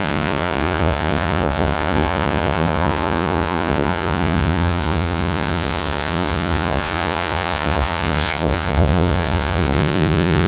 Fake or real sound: fake